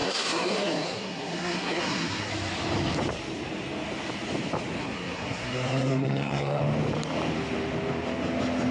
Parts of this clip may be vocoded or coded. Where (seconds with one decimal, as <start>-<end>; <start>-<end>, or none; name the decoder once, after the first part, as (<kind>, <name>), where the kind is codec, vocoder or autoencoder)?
0.0-2.3 (codec, SNAC); 4.8-6.6